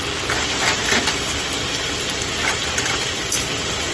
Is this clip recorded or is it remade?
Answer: recorded